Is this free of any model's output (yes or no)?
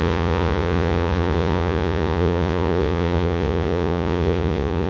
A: no